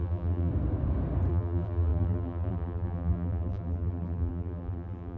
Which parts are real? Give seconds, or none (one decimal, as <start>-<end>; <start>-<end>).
0.5-1.3